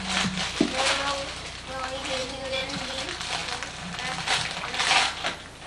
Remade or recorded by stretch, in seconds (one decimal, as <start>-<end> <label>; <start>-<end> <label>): 0.0-2.2 recorded; 2.2-3.0 remade; 3.0-5.7 recorded